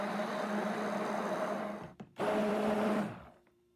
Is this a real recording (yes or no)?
no